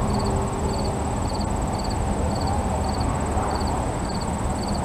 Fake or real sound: real